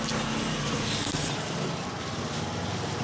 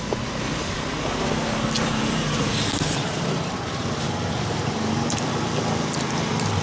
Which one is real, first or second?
first